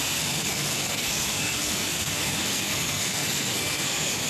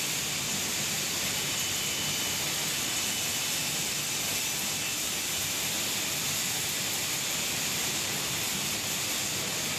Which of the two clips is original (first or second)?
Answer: second